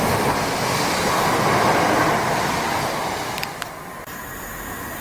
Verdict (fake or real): real